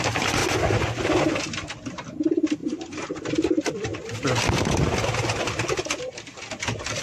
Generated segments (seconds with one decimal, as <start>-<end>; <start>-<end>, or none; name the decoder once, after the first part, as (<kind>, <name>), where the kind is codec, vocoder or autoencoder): 2.6-3.2 (vocoder, BigVGAN v2)